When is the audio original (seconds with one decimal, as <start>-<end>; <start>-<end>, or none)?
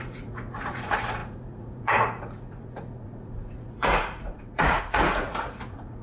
none